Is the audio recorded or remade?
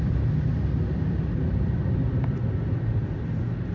recorded